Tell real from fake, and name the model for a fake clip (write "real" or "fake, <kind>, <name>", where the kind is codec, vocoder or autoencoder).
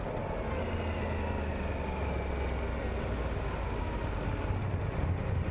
real